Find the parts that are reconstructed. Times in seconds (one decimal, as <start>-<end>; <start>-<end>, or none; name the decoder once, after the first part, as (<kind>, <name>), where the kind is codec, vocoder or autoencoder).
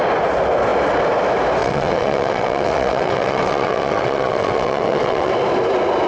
1.6-5.3 (vocoder, WaveNeXt)